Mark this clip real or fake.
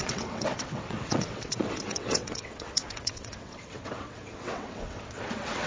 fake